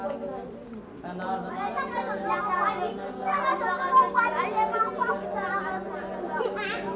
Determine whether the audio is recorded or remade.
recorded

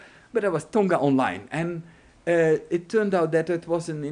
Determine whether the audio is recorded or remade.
recorded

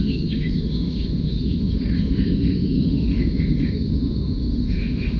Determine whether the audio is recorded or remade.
remade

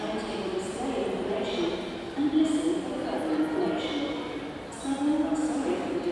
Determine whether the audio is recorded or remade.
recorded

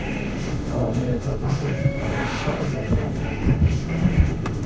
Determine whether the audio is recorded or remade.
remade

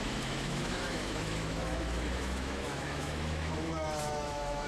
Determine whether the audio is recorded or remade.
remade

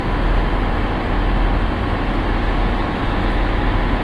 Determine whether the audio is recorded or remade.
recorded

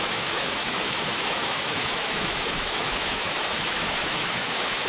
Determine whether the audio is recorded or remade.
remade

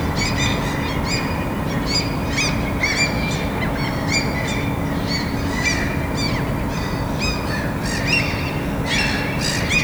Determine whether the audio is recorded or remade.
recorded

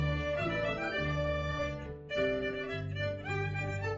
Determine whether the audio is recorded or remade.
recorded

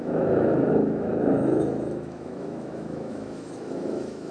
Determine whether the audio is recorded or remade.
remade